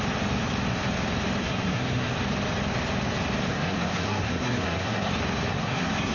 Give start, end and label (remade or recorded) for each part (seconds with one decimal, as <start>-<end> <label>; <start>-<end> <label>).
0.0-1.4 recorded; 1.4-2.1 remade; 2.1-3.5 recorded; 3.5-5.1 remade; 5.1-5.5 recorded; 5.5-6.1 remade

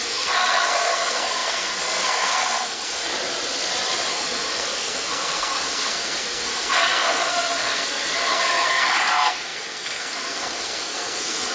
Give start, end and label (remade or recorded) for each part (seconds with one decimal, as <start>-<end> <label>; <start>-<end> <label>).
0.0-3.1 remade; 3.1-4.1 recorded; 4.1-11.5 remade

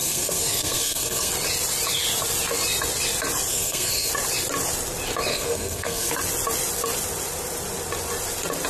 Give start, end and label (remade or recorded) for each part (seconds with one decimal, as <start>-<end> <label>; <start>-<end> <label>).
0.0-1.3 remade; 1.3-3.5 recorded; 3.5-4.1 remade; 4.1-5.3 recorded; 5.3-6.1 remade; 6.1-8.7 recorded

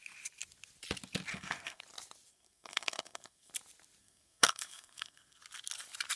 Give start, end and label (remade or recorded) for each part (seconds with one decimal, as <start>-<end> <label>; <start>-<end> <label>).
0.0-1.3 recorded; 1.3-1.8 remade; 1.8-2.3 recorded; 2.3-3.5 remade; 3.5-4.0 recorded; 4.0-5.4 remade; 5.4-6.2 recorded

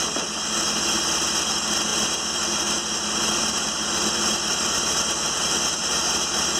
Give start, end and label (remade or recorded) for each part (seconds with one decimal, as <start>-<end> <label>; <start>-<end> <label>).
0.0-6.6 recorded

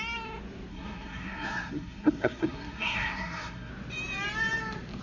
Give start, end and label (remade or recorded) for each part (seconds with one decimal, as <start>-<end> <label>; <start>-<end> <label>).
0.0-0.7 recorded; 0.7-3.7 remade; 3.7-5.0 recorded

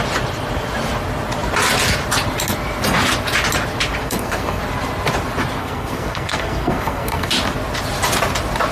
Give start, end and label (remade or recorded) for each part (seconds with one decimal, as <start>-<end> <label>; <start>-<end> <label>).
0.0-4.0 recorded; 4.0-4.6 remade; 4.6-5.6 recorded; 5.6-7.3 remade; 7.3-8.7 recorded